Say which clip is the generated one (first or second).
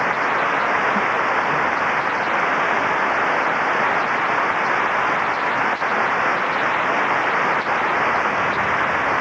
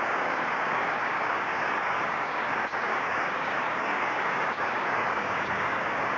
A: second